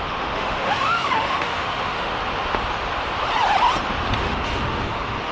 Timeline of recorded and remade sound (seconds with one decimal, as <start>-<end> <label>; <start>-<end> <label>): 0.0-2.1 remade; 2.1-4.2 recorded; 4.2-5.3 remade